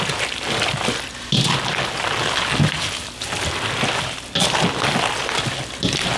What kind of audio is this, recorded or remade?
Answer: recorded